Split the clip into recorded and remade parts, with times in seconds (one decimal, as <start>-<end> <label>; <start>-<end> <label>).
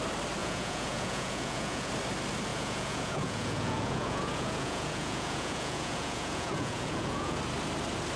0.0-0.4 recorded; 0.4-1.9 remade; 1.9-2.5 recorded; 2.5-7.4 remade; 7.4-8.2 recorded